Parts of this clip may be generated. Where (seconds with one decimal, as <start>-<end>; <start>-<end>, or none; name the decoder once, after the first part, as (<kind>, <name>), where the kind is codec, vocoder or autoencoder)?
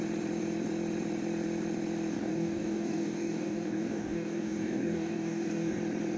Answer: 2.1-5.8 (codec, DAC)